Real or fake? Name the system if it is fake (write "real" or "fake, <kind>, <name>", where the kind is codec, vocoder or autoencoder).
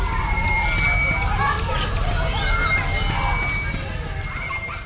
real